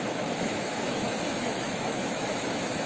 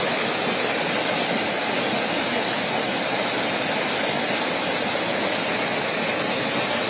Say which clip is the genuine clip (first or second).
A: second